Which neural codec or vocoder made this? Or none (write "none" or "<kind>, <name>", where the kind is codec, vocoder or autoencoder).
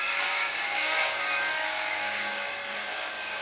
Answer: codec, DAC